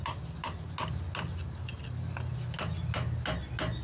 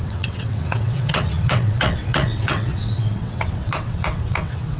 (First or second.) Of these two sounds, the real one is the first